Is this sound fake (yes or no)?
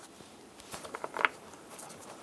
yes